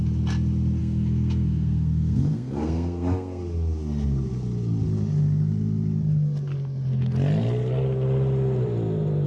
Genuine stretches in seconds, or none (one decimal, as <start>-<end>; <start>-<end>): 0.0-0.8; 3.4-9.3